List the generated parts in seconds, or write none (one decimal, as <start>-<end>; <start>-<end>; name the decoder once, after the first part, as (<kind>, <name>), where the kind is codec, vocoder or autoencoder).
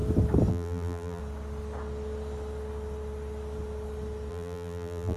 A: 0.5-1.2 (vocoder, BigVGAN v2); 4.3-5.2